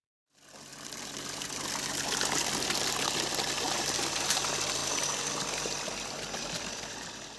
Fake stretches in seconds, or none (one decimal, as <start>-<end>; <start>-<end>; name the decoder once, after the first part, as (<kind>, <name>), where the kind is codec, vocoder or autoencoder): none